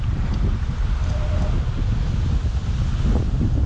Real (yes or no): yes